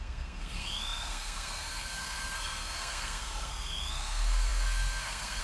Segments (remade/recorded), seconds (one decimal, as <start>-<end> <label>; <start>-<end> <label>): 0.0-5.4 remade